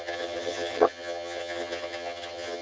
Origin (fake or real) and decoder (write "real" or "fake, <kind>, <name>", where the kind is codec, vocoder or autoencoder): fake, vocoder, HiFi-GAN